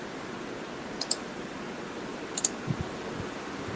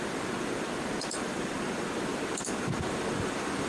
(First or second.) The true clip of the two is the first